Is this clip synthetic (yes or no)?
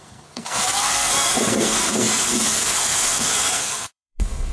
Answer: yes